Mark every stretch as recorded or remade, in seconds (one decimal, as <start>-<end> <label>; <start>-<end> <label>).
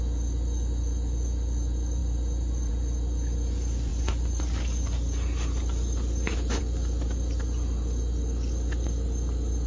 0.0-9.7 recorded